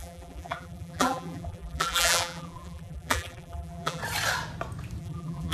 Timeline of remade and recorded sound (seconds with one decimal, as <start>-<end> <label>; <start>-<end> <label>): 0.0-4.0 remade; 4.0-5.0 recorded; 5.0-5.5 remade